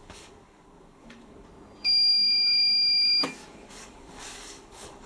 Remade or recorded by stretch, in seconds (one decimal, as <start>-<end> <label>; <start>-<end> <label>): 0.0-5.1 remade